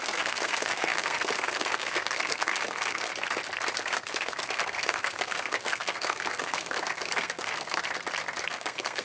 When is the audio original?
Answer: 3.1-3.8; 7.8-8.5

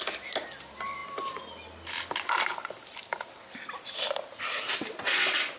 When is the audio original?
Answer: 0.0-5.6

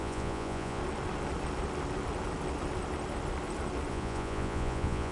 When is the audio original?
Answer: 0.8-3.9

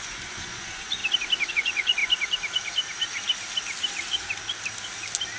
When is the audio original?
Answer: 1.0-1.5; 2.0-5.4

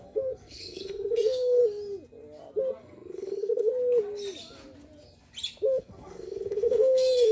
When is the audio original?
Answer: 1.6-2.8; 3.7-5.8

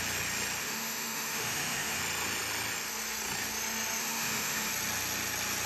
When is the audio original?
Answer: 0.0-0.6; 2.0-4.0; 4.7-5.7

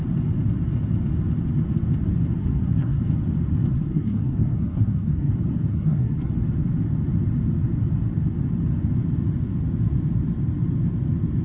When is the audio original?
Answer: 0.0-2.4; 3.0-3.7; 5.3-5.7; 6.3-11.4